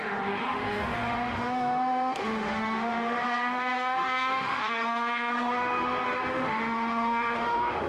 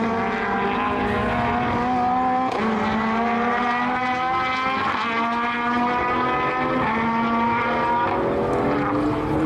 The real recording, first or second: second